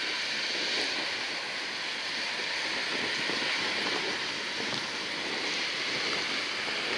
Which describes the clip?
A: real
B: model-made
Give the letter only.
A